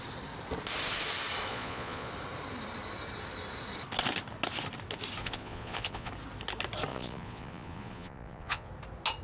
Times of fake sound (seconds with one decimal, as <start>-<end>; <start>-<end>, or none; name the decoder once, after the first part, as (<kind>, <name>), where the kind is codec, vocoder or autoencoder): 1.5-2.1 (vocoder, Vocos); 5.2-6.1; 6.9-8.7